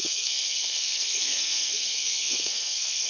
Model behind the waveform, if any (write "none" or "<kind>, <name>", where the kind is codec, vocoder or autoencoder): codec, SNAC